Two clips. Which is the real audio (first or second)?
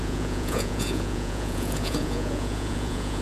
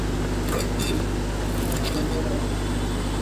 second